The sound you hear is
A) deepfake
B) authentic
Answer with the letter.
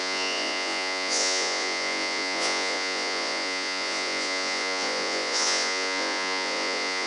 A